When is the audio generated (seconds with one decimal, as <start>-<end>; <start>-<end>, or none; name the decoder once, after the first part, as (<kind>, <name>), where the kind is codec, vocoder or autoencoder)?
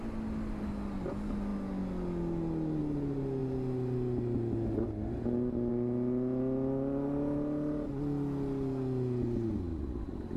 9.7-10.4 (vocoder, BigVGAN v2)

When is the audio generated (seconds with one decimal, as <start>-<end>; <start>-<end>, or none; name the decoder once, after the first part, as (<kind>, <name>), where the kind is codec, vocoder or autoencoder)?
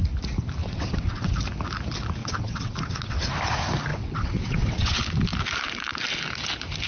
0.6-1.3 (vocoder, WaveNeXt); 2.2-3.3; 3.9-5.0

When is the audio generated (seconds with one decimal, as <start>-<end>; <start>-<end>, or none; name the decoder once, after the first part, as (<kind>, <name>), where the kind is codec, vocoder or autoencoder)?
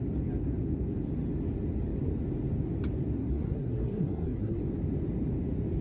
3.2-4.6 (codec, SNAC)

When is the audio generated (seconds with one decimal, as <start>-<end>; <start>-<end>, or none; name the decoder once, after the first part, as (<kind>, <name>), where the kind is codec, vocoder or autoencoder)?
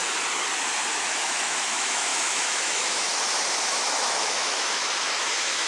0.9-3.1 (autoencoder, DAC-VAE); 3.7-5.7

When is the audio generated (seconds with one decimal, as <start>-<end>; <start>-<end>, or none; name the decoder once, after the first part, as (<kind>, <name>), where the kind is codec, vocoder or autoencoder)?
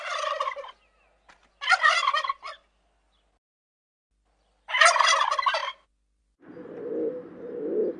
none